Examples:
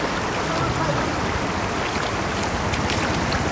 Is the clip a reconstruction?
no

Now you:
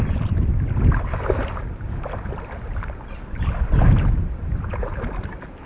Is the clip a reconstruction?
no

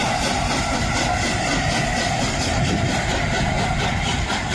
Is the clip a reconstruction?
no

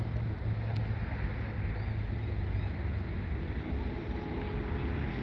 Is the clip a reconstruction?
no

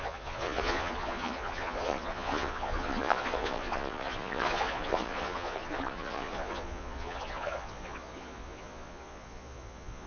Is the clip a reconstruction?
yes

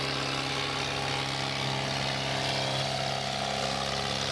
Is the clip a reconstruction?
no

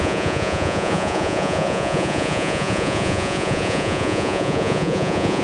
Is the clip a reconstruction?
yes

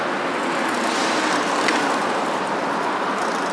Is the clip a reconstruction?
no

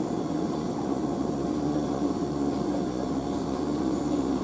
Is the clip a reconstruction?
yes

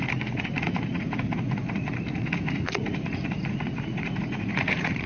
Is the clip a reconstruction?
yes